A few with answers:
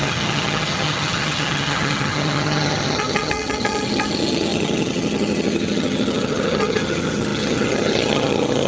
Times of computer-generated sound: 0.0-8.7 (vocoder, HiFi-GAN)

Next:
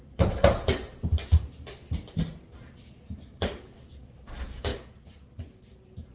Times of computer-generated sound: none

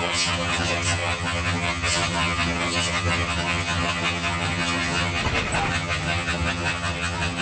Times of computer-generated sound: 0.0-5.2 (vocoder, HiFi-GAN); 5.7-7.4